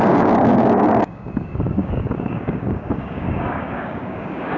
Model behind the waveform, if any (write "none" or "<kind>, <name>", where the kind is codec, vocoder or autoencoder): codec, DAC